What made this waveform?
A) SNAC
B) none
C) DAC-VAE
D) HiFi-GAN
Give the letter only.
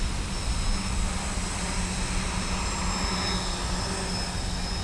B